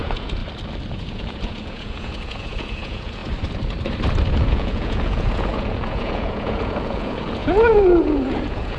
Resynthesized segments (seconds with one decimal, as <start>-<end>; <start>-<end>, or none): 0.0-0.4; 0.9-3.2; 4.3-8.8